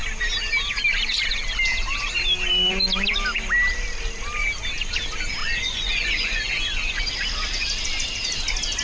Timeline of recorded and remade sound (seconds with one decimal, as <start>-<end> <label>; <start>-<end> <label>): 0.0-5.4 recorded; 5.4-7.0 remade; 7.0-8.8 recorded